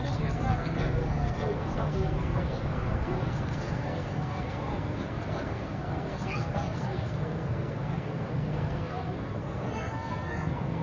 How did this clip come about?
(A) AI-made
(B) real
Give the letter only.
A